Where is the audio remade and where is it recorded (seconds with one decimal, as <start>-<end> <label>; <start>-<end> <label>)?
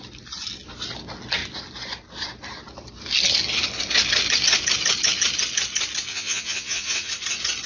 0.0-6.1 recorded; 6.1-7.1 remade; 7.1-7.7 recorded